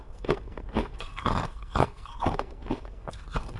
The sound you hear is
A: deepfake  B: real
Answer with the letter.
A